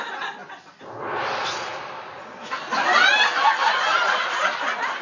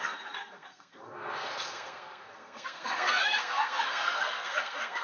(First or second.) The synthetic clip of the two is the second